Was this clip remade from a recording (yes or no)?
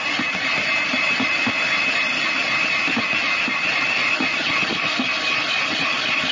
no